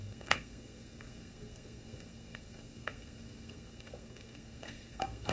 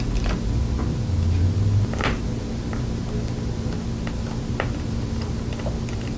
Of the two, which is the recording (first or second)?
second